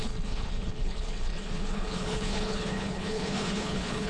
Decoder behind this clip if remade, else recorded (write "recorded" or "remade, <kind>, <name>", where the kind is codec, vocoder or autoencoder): remade, codec, HILCodec